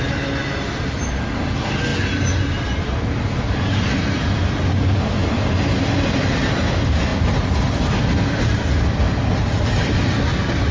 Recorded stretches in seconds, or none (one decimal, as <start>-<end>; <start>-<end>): 0.0-10.7